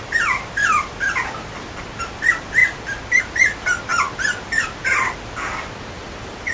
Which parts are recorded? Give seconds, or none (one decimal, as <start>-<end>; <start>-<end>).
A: 0.0-6.5

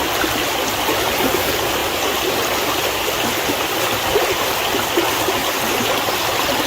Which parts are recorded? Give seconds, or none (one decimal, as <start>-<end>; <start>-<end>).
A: 0.0-6.7

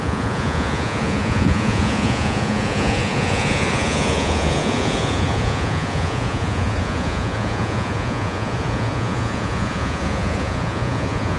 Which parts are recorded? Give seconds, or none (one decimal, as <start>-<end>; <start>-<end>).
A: none

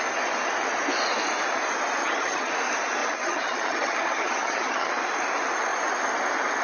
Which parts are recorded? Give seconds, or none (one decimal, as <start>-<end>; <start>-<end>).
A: 0.0-2.0; 2.5-3.0; 4.9-6.6

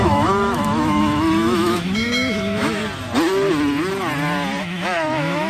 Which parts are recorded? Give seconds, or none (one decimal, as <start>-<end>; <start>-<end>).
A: 2.8-4.6

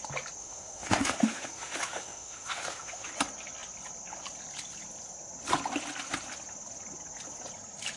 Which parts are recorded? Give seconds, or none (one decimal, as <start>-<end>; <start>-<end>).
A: 0.0-0.4; 3.1-8.0

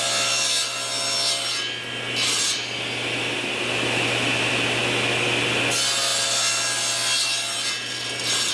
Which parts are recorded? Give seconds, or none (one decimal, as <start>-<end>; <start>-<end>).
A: 0.0-8.5

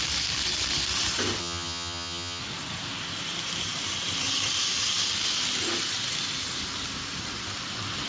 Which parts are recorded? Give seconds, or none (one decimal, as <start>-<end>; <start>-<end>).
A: 0.0-1.4; 2.4-8.1